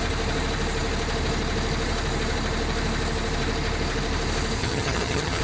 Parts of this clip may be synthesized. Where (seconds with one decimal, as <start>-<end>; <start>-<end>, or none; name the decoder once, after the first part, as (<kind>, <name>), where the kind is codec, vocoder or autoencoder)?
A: 4.6-5.4 (vocoder, HiFi-GAN)